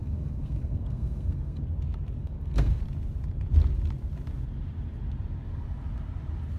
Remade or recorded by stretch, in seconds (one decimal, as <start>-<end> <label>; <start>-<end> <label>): 0.0-1.6 remade; 1.6-2.2 recorded; 2.2-2.8 remade; 2.8-6.6 recorded